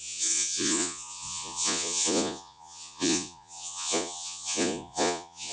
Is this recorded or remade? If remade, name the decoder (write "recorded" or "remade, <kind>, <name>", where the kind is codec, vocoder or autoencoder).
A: remade, vocoder, Vocos